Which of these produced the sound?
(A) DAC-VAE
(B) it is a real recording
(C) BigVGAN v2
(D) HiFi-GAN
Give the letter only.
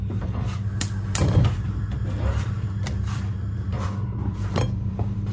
C